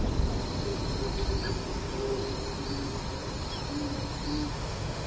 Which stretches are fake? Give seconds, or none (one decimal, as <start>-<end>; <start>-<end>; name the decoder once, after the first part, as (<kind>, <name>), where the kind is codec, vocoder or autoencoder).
4.3-5.1 (autoencoder, DAC-VAE)